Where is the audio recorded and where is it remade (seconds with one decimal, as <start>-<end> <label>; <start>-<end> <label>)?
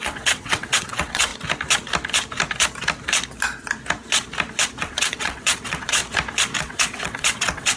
0.0-1.3 remade; 1.3-4.8 recorded; 4.8-6.0 remade; 6.0-6.6 recorded; 6.6-7.8 remade